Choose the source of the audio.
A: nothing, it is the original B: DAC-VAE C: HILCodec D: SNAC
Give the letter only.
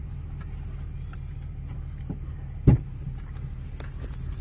A